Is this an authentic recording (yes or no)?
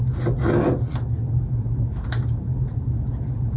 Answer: yes